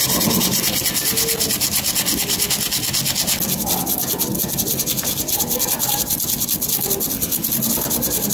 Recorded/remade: recorded